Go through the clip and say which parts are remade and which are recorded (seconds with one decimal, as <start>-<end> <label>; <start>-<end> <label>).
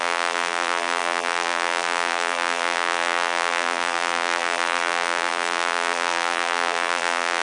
0.0-7.4 remade